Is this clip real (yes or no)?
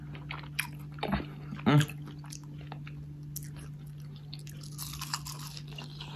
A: yes